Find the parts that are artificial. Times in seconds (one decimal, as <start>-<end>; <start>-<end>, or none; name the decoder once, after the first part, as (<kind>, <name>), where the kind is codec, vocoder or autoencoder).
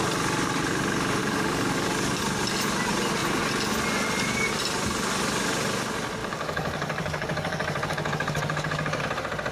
1.2-2.2 (codec, DAC); 6.2-9.0